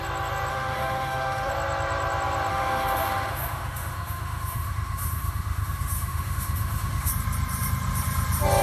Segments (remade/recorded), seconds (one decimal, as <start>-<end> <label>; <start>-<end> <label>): 0.0-0.5 recorded; 0.5-1.5 remade; 1.5-2.5 recorded; 2.5-7.1 remade; 7.1-8.6 recorded